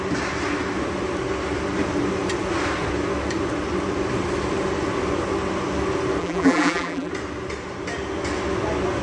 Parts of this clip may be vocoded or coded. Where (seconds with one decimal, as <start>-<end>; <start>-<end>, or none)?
6.2-7.1